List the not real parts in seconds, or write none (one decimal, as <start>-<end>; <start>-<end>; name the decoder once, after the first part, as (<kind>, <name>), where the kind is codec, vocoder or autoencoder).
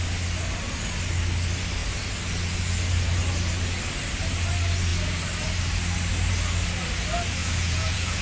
7.4-8.2 (vocoder, Vocos)